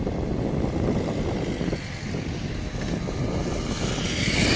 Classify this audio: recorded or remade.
recorded